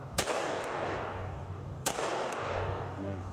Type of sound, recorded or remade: remade